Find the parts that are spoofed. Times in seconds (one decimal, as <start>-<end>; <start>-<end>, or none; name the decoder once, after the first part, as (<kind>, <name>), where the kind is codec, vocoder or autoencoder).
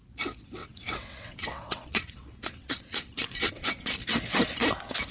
0.6-3.7 (vocoder, WaveNeXt)